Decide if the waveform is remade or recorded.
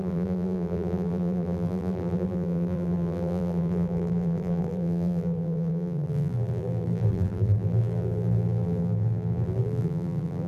remade